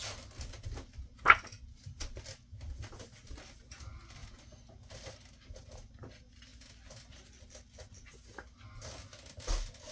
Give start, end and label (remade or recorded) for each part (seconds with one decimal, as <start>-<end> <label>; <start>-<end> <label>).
0.0-9.9 recorded